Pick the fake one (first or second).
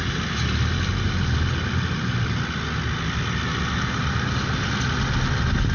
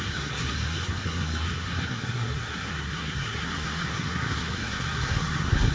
second